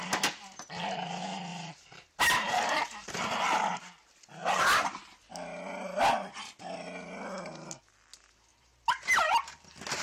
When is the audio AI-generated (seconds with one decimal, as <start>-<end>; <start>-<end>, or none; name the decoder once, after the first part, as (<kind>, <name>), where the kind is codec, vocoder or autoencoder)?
1.5-3.3 (vocoder, BigVGAN v2); 8.5-9.2